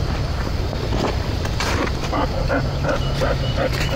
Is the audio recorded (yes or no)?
no